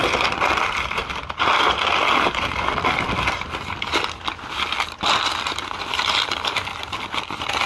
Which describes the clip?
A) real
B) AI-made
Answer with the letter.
A